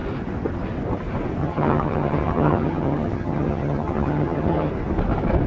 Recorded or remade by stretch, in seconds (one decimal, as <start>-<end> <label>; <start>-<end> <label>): 0.0-1.4 recorded; 1.4-4.7 remade; 4.7-5.5 recorded